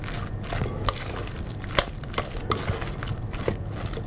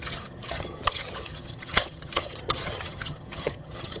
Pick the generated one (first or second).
second